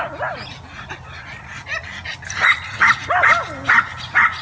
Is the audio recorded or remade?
recorded